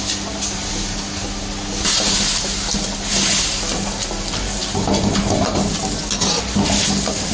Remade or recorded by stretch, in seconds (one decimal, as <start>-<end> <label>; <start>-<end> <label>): 0.0-7.3 recorded